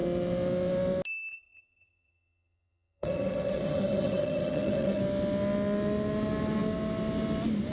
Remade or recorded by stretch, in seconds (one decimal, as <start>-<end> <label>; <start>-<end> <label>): 0.0-1.3 recorded; 1.3-5.0 remade; 5.0-7.7 recorded